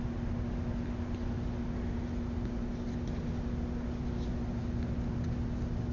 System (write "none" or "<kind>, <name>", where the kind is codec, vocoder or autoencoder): none